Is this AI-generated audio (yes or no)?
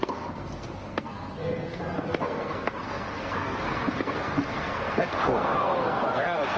yes